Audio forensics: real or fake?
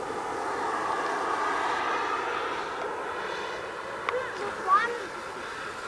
real